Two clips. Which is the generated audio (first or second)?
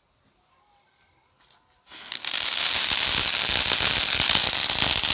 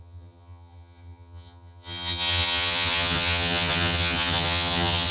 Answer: second